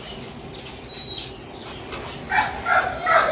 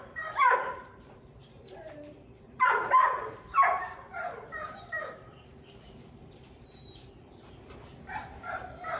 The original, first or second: first